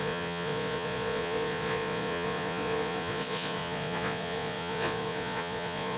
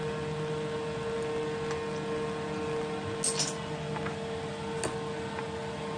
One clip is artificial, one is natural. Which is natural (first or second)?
second